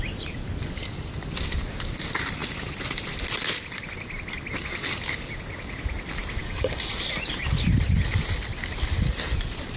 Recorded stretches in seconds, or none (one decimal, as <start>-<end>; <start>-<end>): 0.0-6.4; 6.9-9.8